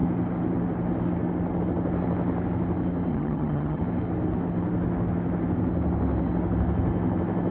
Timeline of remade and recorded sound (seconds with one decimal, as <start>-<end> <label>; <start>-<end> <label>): 0.0-3.1 recorded; 3.1-3.8 remade; 3.8-7.5 recorded

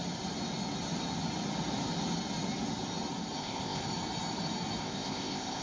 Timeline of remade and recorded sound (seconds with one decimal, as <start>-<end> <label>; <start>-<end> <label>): 0.0-3.4 recorded; 3.4-3.8 remade; 3.8-4.8 recorded; 4.8-5.6 remade